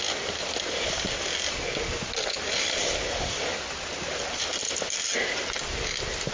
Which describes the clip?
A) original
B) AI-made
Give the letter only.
A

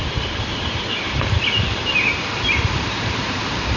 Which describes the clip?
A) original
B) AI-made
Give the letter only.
B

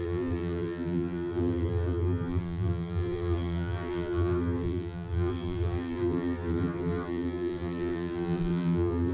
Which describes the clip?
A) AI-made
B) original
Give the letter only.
A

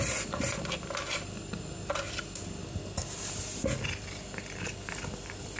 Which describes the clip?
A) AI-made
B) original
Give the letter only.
B